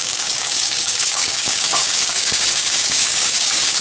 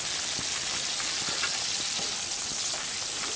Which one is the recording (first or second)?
second